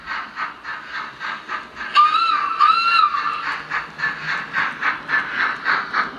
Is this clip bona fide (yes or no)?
yes